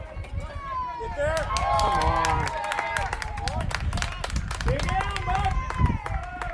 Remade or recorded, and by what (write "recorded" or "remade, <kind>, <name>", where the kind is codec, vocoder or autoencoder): recorded